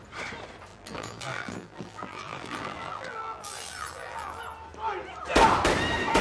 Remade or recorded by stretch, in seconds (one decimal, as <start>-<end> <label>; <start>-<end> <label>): 0.0-0.7 recorded; 0.7-4.4 remade; 4.4-6.2 recorded